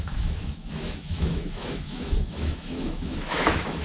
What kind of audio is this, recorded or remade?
remade